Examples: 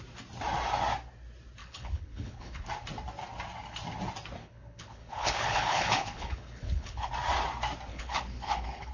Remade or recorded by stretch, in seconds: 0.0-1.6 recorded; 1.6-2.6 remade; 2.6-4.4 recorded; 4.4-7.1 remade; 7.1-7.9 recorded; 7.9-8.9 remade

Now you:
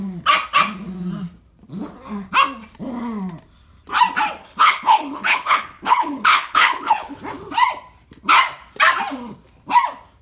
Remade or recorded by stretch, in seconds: 0.0-4.4 recorded; 4.4-7.2 remade; 7.2-10.2 recorded

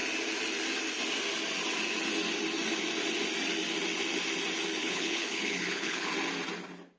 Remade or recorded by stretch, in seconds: 0.0-4.8 recorded; 4.8-6.1 remade; 6.1-7.0 recorded

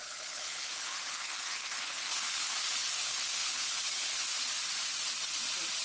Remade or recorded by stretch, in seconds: 0.0-4.5 remade; 4.5-5.8 recorded

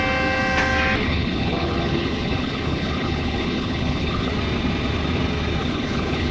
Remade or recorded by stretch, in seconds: 0.0-1.0 recorded; 1.0-4.3 remade; 4.3-5.6 recorded; 5.6-6.3 remade

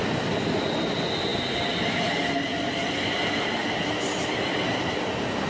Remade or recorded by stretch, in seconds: 0.0-5.5 recorded

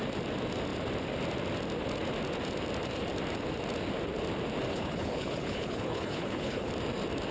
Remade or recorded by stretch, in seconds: 0.0-4.7 recorded; 4.7-6.7 remade; 6.7-7.3 recorded